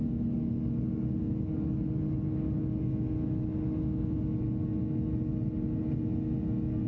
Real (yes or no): yes